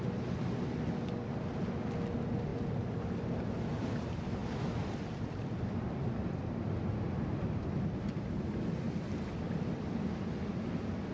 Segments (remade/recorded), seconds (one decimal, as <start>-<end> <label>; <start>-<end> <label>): 0.0-4.4 recorded; 4.4-8.0 remade; 8.0-11.1 recorded